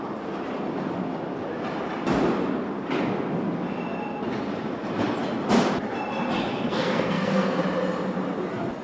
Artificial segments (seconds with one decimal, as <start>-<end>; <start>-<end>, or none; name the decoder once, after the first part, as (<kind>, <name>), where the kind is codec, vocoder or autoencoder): 6.5-7.6 (codec, SNAC)